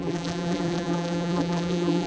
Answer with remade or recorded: remade